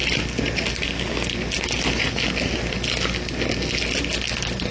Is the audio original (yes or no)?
yes